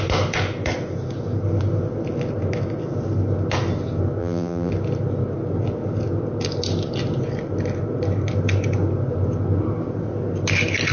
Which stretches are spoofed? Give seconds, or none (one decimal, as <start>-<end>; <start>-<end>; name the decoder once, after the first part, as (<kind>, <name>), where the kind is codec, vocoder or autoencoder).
4.2-4.7 (vocoder, BigVGAN v2)